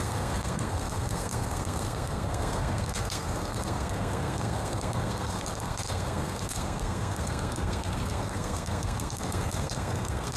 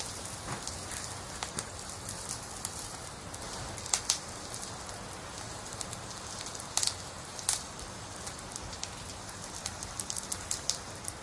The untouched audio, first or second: second